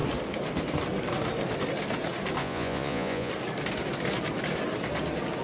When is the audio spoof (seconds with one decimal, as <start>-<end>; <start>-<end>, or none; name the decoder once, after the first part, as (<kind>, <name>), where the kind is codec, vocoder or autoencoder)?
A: 2.4-3.3 (vocoder, Vocos)

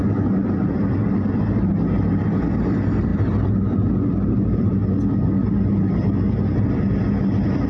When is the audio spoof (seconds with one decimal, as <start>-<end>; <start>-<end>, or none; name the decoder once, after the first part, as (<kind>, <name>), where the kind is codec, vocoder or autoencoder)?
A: none